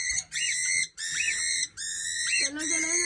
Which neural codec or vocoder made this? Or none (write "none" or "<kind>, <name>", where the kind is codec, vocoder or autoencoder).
none